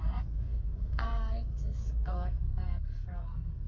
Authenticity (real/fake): fake